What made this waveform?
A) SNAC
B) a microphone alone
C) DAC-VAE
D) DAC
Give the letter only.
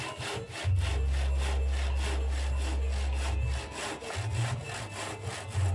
B